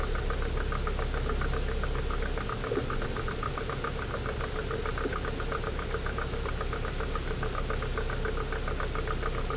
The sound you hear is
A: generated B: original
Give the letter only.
B